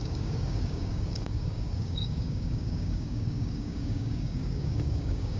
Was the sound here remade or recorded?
remade